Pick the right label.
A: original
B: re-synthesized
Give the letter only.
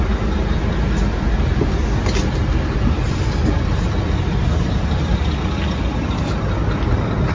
A